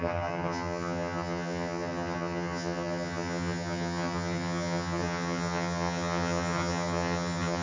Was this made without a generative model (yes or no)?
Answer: no